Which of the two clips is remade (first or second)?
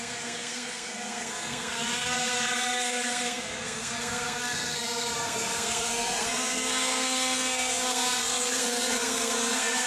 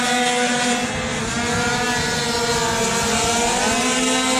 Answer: first